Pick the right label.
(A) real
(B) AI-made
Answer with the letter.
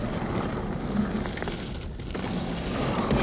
A